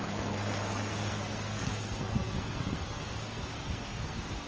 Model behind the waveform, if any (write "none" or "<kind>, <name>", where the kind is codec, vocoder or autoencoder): codec, SNAC